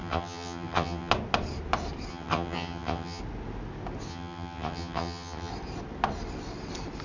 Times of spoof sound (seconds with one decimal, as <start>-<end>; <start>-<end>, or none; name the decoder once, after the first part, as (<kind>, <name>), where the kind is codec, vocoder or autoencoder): 0.0-1.1 (vocoder, HiFi-GAN); 2.1-3.2; 4.1-5.5